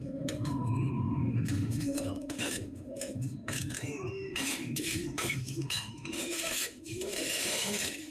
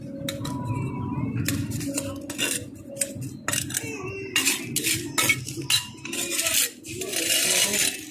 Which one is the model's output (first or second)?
first